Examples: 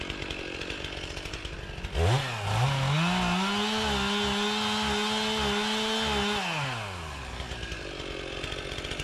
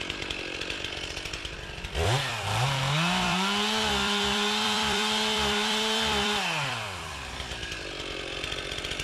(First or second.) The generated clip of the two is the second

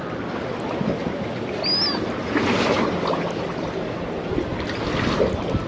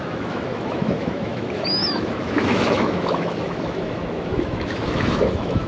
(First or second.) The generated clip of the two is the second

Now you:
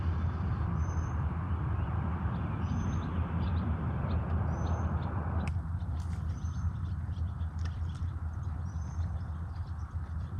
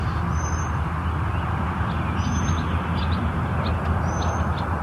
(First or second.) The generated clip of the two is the first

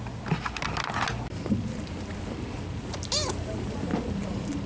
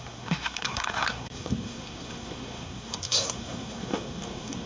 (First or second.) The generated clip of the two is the second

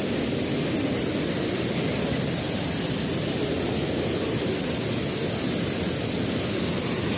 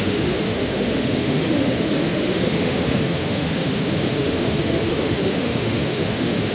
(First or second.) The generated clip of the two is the second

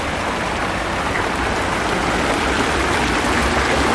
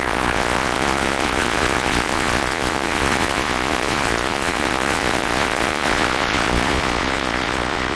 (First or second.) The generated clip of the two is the second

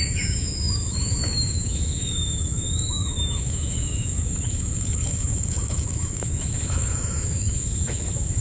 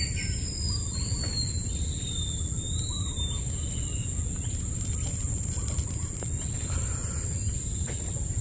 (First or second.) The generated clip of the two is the first